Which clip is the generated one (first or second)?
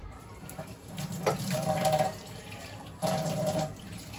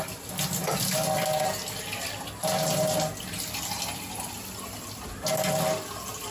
first